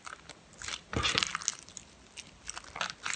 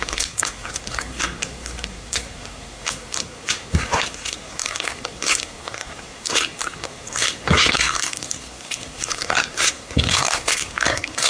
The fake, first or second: second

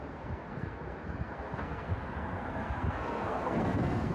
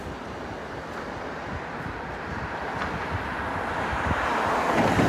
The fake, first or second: first